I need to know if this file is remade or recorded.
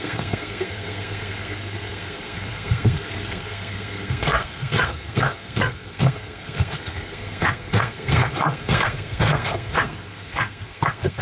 remade